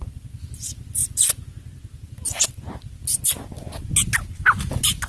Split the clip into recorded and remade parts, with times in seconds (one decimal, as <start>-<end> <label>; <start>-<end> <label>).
0.0-5.1 recorded